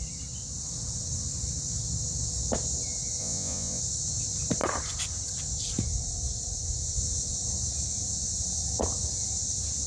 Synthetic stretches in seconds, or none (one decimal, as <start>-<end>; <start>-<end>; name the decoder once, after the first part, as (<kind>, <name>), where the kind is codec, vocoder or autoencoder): 3.2-3.8 (vocoder, Vocos)